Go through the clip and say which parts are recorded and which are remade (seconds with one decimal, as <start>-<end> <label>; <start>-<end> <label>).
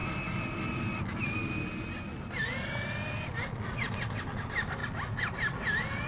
0.0-6.1 recorded